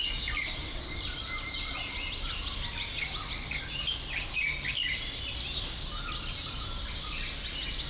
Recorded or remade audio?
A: recorded